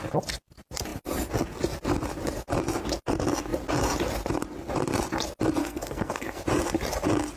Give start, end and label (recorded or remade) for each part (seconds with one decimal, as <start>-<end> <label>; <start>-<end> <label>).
0.0-5.6 recorded; 5.6-6.4 remade; 6.4-7.4 recorded